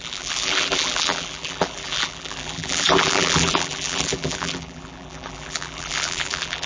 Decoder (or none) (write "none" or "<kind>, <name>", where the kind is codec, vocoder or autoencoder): vocoder, BigVGAN v2